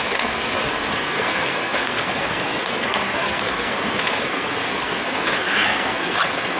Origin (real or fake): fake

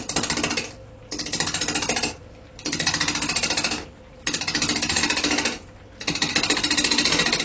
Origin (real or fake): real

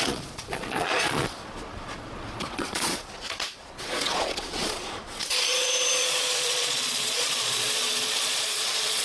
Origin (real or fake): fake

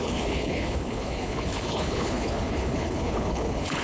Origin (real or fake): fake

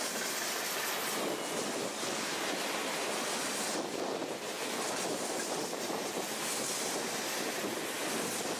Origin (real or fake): real